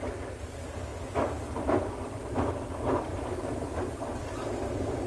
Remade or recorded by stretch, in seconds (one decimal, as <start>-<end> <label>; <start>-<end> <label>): 0.0-3.1 remade; 3.1-3.8 recorded; 3.8-5.1 remade